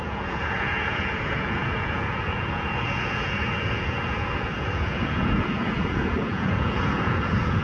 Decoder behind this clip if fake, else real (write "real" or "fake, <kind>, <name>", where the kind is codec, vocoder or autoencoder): fake, vocoder, Vocos